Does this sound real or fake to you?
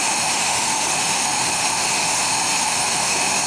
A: fake